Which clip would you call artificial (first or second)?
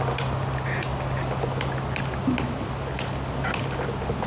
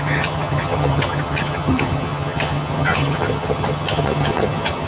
second